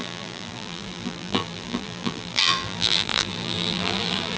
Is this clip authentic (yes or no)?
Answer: no